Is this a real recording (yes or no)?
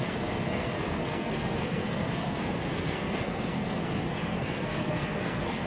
no